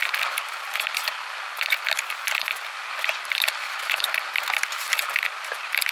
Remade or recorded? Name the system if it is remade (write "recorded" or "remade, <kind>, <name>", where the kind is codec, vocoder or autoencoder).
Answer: remade, vocoder, BigVGAN v2